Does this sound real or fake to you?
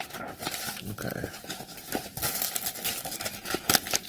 real